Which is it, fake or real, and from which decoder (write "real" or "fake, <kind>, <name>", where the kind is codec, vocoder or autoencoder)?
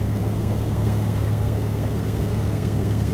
fake, codec, SNAC